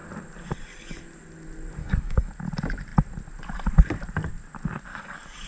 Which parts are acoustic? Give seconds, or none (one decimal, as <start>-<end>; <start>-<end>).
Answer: 0.0-1.8; 2.3-4.9